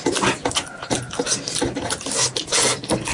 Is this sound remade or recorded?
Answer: recorded